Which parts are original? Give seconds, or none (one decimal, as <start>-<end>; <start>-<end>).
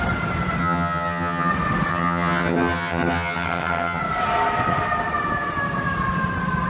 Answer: 0.0-0.6; 1.5-1.9; 4.0-6.7